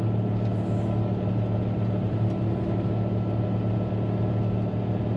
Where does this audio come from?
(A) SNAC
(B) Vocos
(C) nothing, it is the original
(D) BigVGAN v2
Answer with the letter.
C